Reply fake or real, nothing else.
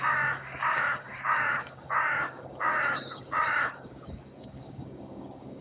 fake